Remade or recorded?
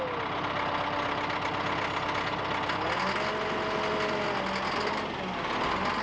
recorded